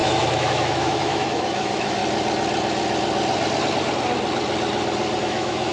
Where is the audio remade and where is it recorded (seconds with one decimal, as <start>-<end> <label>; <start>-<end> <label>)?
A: 0.0-2.0 remade; 2.0-5.2 recorded; 5.2-5.7 remade